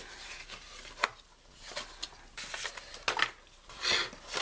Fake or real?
real